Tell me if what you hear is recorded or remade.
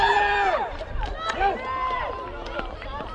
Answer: recorded